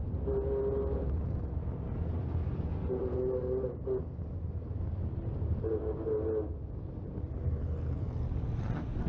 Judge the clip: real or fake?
real